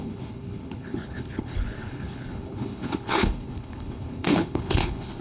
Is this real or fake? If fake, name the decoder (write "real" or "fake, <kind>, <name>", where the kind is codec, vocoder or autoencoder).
fake, codec, HILCodec